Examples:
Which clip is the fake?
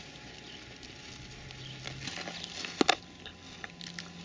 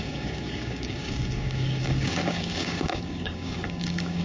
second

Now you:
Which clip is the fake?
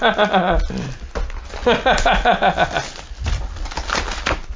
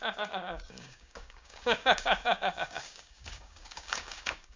second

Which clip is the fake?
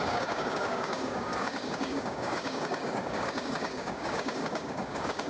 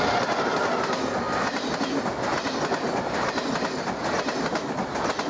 first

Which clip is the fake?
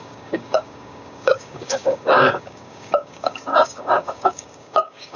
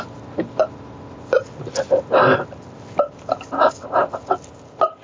first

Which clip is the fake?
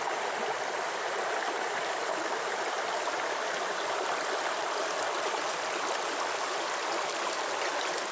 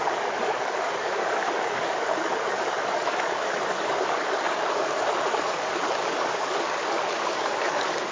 second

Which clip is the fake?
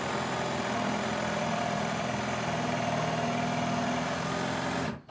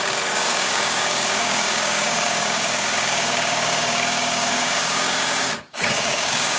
second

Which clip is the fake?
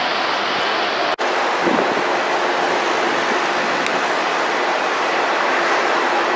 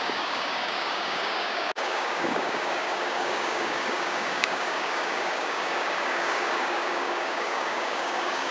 second